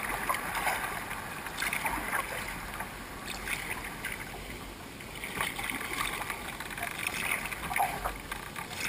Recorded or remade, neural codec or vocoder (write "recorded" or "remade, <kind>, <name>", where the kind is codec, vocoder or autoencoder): recorded